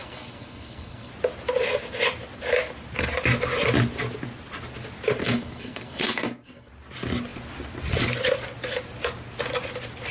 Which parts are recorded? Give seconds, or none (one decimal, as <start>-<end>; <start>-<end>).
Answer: 1.1-5.2; 6.7-10.1